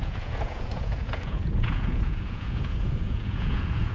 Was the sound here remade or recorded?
remade